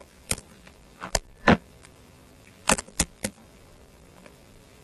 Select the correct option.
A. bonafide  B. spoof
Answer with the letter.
B